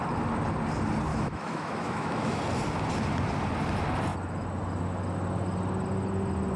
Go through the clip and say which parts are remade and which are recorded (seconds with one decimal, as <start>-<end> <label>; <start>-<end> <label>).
0.0-1.1 recorded; 1.1-2.4 remade; 2.4-6.6 recorded